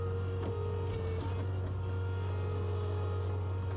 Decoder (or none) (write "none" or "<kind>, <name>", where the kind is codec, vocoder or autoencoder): none